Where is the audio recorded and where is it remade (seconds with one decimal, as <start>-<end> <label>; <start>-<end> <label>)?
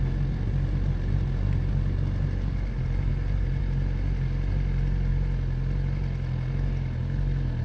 0.0-7.6 recorded